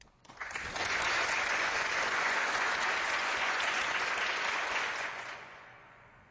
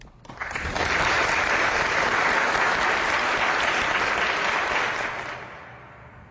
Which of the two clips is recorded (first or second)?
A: second